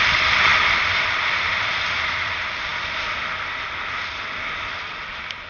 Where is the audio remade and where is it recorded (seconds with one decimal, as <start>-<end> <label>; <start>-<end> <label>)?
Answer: 0.0-2.7 remade; 2.7-4.2 recorded; 4.2-5.5 remade